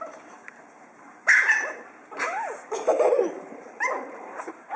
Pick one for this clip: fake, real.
fake